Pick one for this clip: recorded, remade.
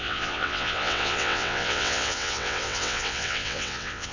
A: remade